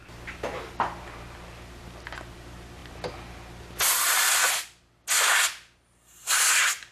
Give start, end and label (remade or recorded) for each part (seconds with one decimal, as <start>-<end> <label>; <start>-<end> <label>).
0.0-6.9 recorded